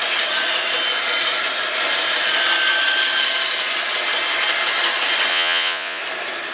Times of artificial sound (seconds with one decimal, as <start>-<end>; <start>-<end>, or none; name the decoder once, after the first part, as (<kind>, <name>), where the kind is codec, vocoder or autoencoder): 5.3-6.0 (vocoder, Vocos)